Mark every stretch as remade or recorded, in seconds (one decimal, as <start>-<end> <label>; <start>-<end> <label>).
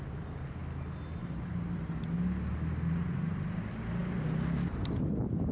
0.0-5.5 recorded